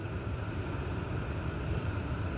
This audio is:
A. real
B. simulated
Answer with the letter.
A